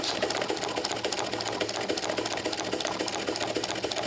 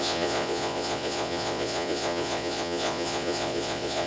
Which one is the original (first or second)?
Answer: first